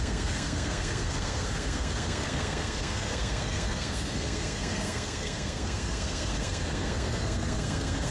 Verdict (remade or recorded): remade